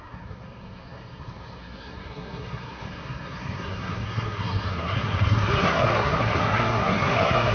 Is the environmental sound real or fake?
fake